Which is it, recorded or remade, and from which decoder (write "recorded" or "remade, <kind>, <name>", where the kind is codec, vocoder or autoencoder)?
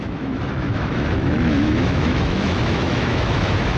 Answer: remade, autoencoder, DAC-VAE